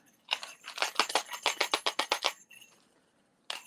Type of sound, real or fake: real